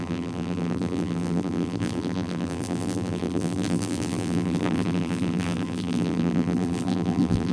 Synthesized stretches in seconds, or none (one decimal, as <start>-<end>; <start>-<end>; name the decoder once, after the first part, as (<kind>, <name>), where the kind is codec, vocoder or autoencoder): 0.0-7.5 (vocoder, BigVGAN v2)